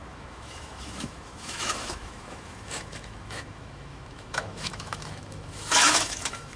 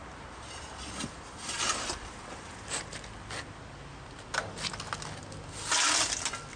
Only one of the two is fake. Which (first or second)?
first